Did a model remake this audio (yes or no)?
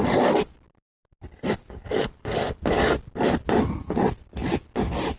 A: no